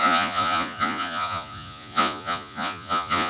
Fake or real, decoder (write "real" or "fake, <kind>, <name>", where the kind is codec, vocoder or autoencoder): fake, vocoder, Vocos